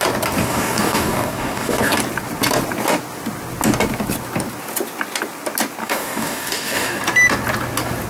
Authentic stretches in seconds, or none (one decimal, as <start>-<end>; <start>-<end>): 0.0-0.4; 2.0-5.8; 7.0-8.1